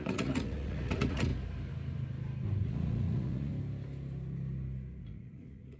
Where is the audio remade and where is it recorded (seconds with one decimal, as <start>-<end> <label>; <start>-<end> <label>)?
0.0-1.3 remade; 1.3-2.6 recorded; 2.6-3.5 remade; 3.5-5.0 recorded; 5.0-5.8 remade